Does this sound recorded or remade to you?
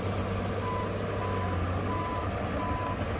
recorded